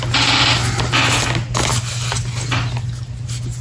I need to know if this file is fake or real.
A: real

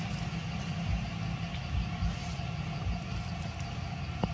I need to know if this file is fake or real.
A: real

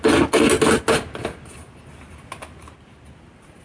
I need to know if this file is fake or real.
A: real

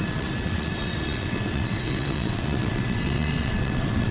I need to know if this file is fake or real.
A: fake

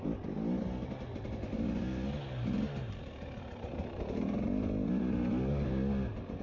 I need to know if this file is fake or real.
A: real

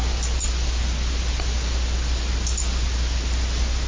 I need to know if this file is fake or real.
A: real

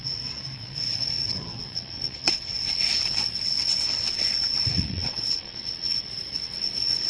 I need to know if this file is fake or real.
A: fake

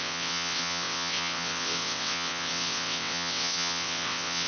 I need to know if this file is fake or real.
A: fake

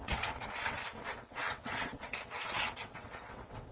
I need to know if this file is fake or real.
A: fake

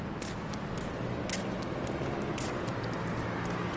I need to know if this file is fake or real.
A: real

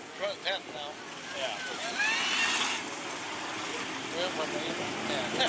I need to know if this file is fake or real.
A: real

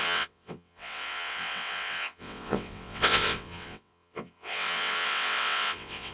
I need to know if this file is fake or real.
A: fake